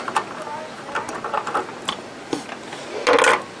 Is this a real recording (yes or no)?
yes